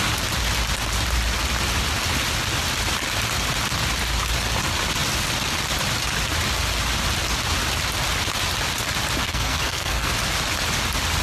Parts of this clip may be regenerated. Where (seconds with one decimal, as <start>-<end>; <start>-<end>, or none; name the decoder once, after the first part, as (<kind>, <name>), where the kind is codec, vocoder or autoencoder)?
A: 9.2-10.1 (codec, SNAC)